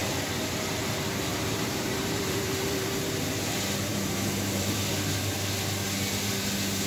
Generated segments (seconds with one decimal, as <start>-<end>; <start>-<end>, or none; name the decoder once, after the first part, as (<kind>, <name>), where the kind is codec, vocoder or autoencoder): 1.3-3.0 (vocoder, BigVGAN v2); 3.9-4.9